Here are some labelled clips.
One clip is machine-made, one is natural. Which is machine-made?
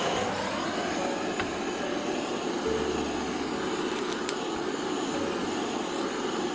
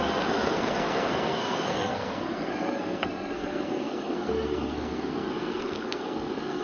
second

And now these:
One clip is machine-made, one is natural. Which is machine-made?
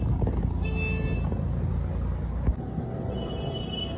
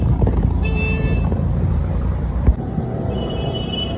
second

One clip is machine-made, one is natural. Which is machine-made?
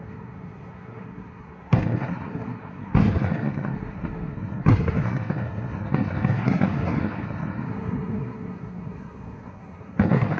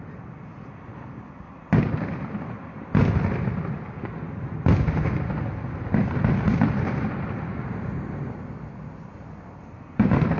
first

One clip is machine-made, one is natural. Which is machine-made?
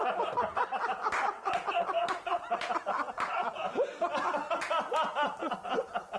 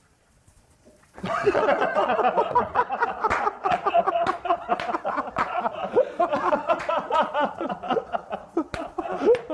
second